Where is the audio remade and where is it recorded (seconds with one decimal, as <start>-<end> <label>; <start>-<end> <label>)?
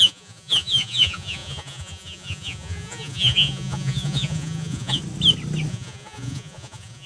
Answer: 0.0-5.0 remade; 5.0-5.7 recorded; 5.7-7.1 remade